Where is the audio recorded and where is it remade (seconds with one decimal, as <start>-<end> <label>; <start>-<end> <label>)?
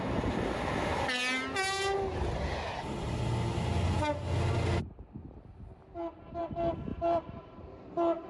0.0-6.9 recorded; 6.9-7.8 remade; 7.8-8.3 recorded